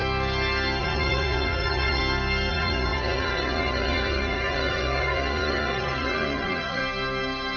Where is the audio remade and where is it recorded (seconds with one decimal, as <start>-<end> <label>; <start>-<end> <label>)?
0.0-0.8 recorded; 0.8-2.0 remade; 2.0-2.5 recorded; 2.5-6.8 remade; 6.8-7.6 recorded